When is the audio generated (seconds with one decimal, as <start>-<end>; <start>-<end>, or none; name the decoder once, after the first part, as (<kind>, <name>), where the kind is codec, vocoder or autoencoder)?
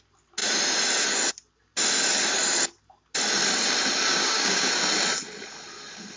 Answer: 4.1-4.7 (codec, DAC)